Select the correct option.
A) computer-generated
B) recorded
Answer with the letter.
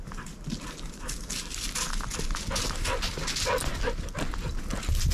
B